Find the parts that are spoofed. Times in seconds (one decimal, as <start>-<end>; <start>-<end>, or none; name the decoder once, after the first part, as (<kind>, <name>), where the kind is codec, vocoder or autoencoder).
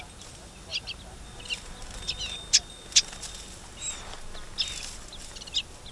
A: none